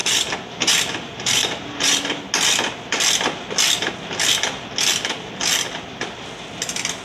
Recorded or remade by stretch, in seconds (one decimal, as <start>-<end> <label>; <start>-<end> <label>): 0.0-2.2 remade; 2.2-7.0 recorded